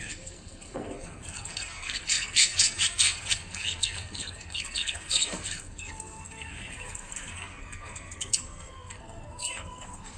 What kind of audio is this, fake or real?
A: fake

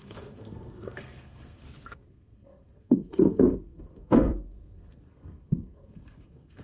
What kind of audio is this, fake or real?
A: fake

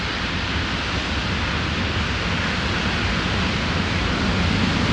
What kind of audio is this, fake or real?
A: real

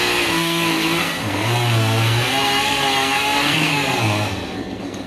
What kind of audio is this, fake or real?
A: fake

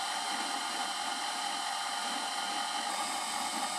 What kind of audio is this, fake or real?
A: real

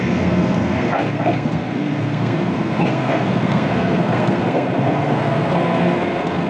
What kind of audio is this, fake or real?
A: fake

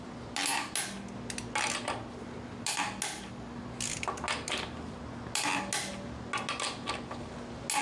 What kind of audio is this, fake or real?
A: real